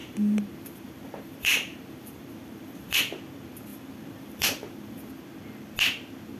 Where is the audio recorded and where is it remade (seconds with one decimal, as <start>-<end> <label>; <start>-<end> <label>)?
0.0-3.0 remade; 3.0-3.7 recorded; 3.7-5.1 remade; 5.1-6.4 recorded